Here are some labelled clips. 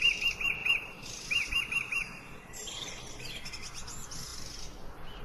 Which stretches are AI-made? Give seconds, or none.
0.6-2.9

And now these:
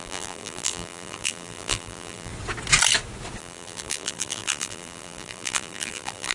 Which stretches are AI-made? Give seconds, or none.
0.0-2.3; 3.4-6.3

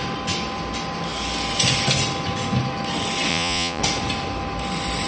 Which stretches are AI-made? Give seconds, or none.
3.3-3.8

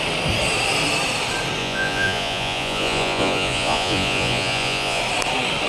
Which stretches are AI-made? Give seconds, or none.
1.6-5.0

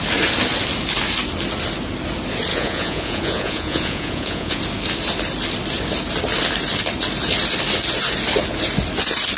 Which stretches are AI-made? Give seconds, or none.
2.5-4.6